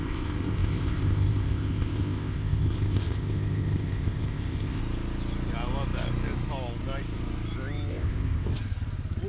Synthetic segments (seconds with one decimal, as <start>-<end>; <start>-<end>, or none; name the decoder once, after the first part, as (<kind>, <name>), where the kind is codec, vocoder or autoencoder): 0.0-4.8 (codec, ZipCodec); 7.9-8.5